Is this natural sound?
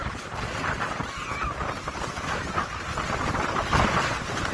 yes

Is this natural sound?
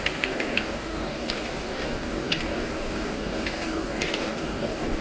no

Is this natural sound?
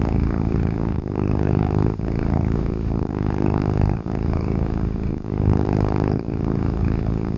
no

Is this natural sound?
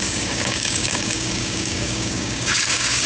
no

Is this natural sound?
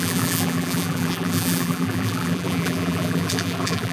no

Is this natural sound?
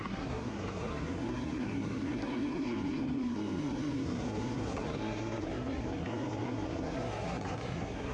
no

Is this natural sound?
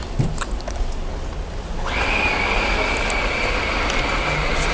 yes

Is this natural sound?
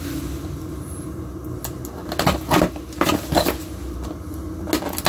yes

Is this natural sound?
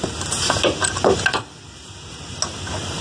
yes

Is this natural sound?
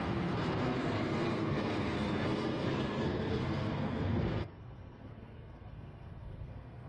no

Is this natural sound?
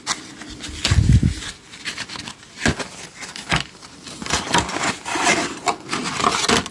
yes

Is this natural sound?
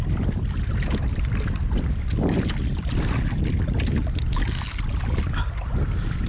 yes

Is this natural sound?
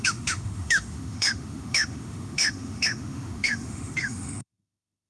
no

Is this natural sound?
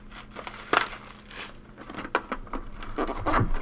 yes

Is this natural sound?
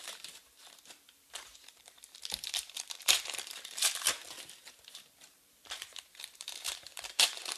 no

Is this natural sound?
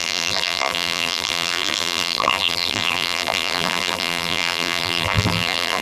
no